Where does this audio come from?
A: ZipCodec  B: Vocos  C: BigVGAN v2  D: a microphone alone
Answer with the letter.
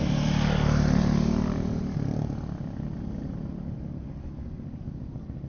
D